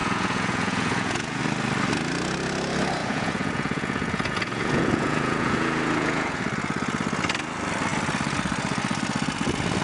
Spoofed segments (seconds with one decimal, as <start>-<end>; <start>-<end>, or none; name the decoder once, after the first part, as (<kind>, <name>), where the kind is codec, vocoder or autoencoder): 0.0-1.4 (vocoder, Vocos); 3.0-6.4